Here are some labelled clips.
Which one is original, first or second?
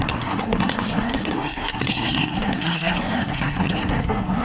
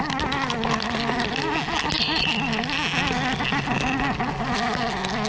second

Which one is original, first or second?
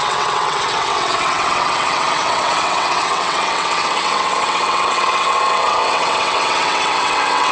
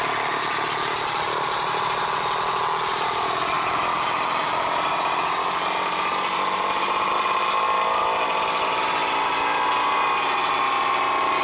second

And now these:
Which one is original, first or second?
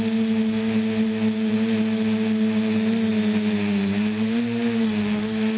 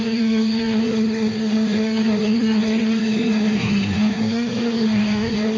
first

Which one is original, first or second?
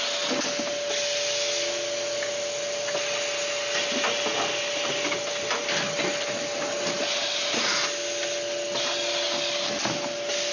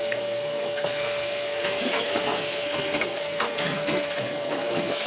first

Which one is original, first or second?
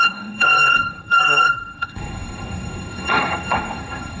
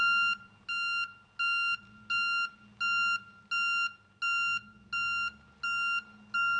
second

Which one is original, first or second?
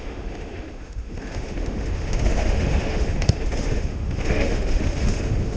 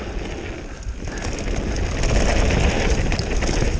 second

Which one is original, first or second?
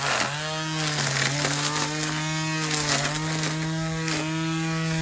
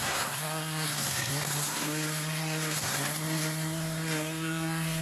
first